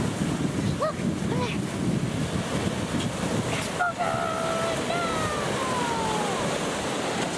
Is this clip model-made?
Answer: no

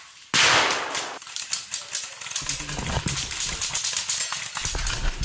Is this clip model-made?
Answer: no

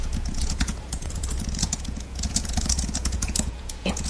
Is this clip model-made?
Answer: yes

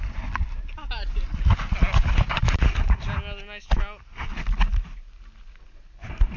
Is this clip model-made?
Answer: no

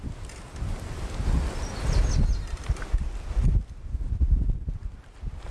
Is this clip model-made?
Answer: no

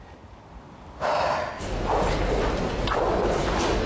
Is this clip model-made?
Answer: no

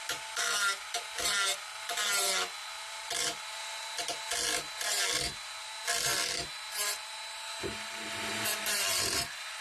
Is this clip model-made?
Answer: no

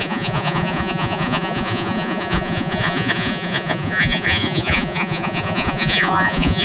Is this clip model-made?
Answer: yes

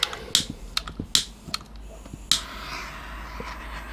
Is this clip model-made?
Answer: no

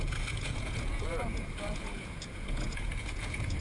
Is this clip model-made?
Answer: yes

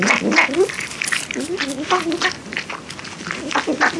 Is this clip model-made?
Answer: no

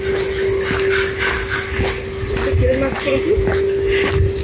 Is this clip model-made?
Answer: no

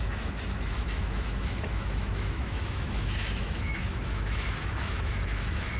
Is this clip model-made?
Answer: yes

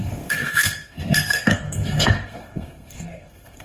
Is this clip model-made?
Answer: yes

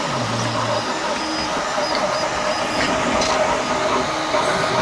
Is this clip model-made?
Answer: no